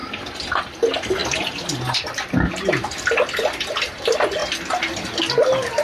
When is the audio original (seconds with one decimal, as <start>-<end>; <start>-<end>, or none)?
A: 0.7-1.2; 3.3-4.4; 5.3-5.8